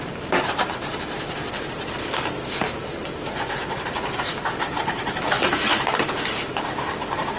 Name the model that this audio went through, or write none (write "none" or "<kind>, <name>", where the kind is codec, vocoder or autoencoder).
vocoder, BigVGAN v2